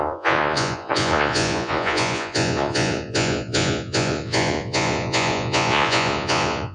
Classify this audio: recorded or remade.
remade